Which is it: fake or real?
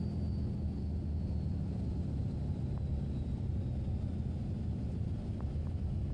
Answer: real